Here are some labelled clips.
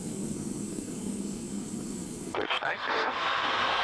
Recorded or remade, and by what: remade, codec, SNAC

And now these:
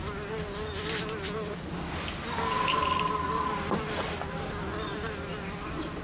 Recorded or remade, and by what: recorded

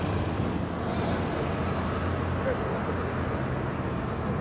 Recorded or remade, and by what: recorded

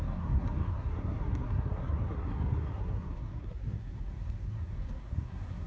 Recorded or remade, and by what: remade, codec, SNAC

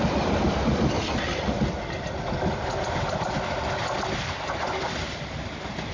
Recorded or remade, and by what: recorded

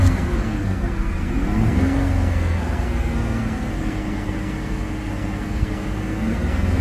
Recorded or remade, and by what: remade, codec, SNAC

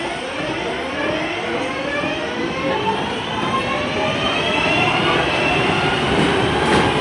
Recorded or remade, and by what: recorded